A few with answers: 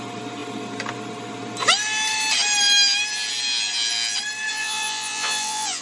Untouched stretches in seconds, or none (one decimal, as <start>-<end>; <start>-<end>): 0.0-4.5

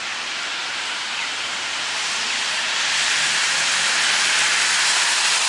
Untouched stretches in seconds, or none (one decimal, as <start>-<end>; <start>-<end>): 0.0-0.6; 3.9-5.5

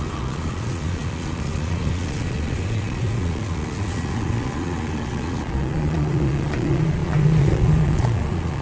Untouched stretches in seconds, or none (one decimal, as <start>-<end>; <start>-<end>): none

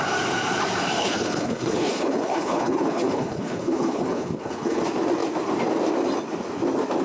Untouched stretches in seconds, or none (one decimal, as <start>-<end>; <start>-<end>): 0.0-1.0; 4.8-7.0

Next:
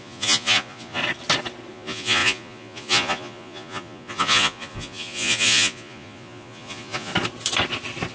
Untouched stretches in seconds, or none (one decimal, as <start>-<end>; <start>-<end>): 1.0-1.7; 7.1-8.1